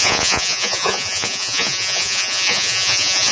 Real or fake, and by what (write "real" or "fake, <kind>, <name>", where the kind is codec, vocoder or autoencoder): fake, vocoder, Vocos